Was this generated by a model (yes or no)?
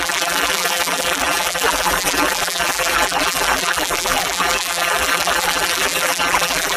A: yes